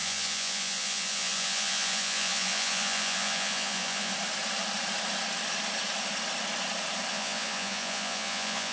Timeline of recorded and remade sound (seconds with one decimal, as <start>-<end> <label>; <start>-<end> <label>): 0.0-4.1 remade; 4.1-7.1 recorded; 7.1-8.7 remade